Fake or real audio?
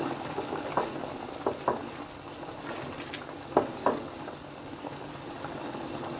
real